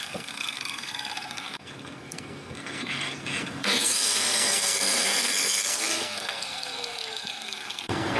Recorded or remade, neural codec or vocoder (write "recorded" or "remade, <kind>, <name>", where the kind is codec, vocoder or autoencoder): remade, codec, SNAC